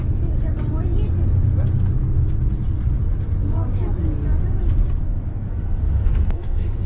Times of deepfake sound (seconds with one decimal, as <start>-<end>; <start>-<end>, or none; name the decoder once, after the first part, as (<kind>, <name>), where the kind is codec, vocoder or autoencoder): 5.3-6.9 (codec, SNAC)